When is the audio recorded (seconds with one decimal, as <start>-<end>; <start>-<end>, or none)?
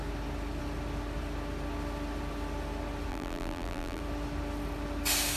0.0-3.1; 4.0-5.4